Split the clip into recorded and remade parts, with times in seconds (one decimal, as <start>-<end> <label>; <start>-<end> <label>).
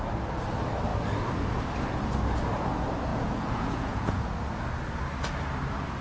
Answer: 0.0-3.1 recorded; 3.1-4.2 remade; 4.2-6.0 recorded